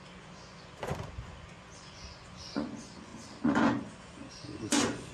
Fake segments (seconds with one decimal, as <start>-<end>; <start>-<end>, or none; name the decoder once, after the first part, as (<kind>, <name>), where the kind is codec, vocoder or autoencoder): 0.0-5.1 (vocoder, Vocos)